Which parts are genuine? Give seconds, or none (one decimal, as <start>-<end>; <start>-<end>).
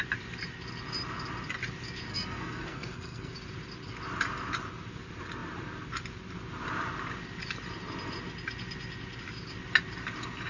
0.0-2.1; 3.3-10.5